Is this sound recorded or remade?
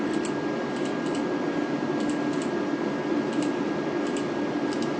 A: recorded